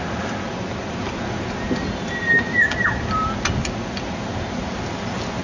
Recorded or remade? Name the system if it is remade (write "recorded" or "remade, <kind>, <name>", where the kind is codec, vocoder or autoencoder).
recorded